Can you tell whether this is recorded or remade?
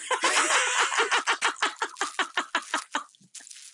recorded